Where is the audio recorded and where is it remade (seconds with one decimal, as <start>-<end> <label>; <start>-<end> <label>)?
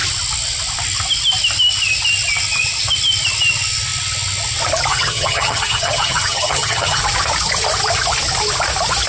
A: 0.0-4.9 recorded; 4.9-7.0 remade; 7.0-9.1 recorded